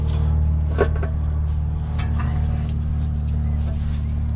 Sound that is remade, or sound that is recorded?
recorded